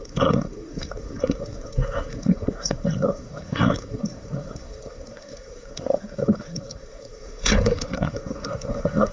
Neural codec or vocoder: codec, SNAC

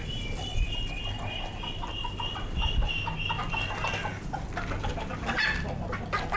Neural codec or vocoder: none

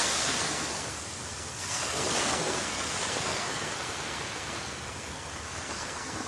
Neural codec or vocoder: codec, SNAC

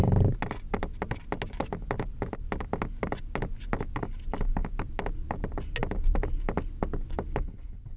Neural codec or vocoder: none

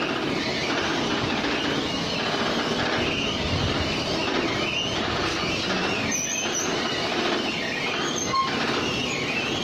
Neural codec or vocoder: none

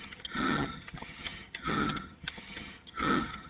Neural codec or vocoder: vocoder, HiFi-GAN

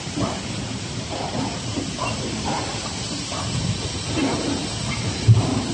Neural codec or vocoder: none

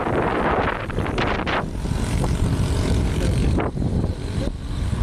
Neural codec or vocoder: none